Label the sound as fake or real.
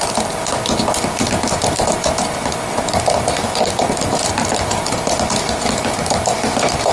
real